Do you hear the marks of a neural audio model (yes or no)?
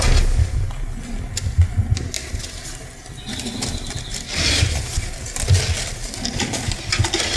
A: no